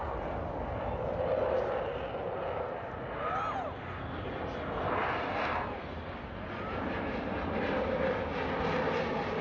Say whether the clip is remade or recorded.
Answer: recorded